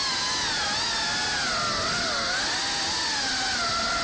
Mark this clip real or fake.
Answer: real